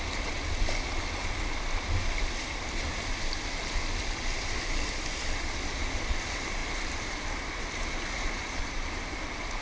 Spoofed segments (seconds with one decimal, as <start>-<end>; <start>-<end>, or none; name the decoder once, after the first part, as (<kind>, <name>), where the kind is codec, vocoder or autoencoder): none